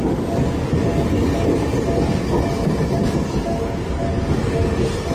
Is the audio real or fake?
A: real